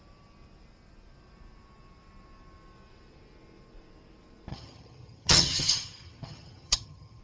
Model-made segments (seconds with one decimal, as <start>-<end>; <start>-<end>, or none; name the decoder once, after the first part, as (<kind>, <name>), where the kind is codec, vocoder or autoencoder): 4.5-7.2 (vocoder, HiFi-GAN)